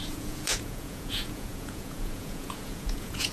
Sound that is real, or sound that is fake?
fake